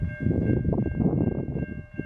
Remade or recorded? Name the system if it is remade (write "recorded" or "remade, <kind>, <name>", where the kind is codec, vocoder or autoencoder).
recorded